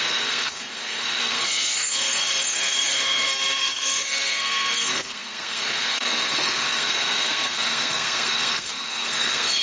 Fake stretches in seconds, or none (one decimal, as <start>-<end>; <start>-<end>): 0.0-9.6